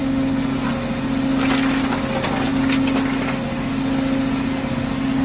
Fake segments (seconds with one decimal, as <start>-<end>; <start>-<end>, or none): none